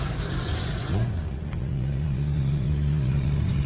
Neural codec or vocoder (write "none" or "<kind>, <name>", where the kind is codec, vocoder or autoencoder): vocoder, Vocos